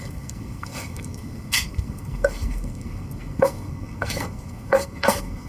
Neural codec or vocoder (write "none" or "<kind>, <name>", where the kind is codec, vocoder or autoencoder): codec, SNAC